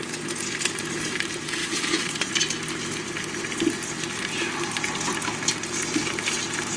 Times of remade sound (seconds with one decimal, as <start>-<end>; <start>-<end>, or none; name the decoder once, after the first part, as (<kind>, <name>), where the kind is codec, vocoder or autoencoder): 1.6-2.3 (vocoder, Vocos)